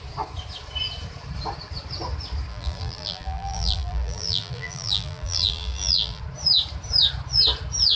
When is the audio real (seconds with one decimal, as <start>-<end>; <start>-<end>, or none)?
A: 0.0-2.5; 6.2-8.0